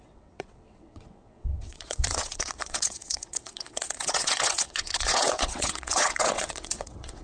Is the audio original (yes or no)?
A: no